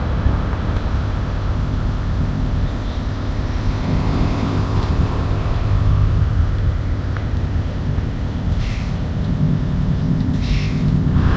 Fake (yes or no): yes